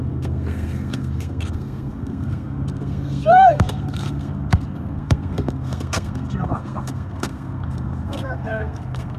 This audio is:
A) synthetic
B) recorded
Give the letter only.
A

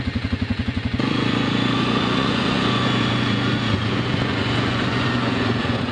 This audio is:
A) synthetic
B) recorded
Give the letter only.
A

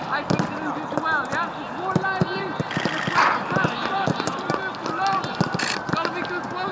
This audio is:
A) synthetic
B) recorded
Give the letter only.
B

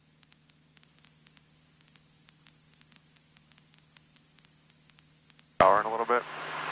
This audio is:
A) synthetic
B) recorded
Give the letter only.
B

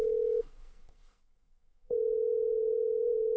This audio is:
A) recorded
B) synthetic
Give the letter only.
B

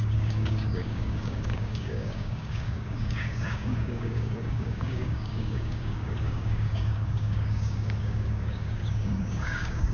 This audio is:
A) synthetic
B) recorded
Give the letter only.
A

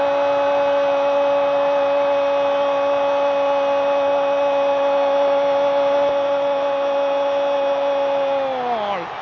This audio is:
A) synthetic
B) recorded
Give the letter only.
B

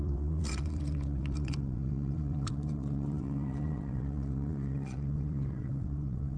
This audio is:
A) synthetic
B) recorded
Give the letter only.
A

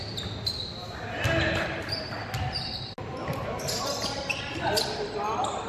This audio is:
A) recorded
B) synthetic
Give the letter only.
A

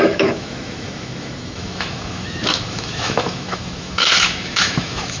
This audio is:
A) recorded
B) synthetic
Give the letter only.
B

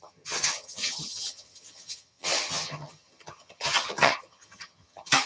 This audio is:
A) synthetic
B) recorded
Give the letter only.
A